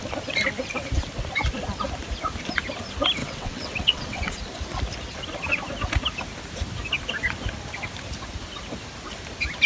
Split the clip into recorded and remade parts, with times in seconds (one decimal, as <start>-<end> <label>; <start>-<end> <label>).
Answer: 0.0-3.2 recorded; 3.2-4.4 remade; 4.4-9.7 recorded